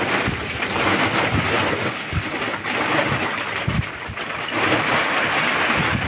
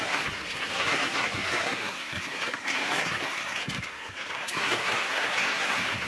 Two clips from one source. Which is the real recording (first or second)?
first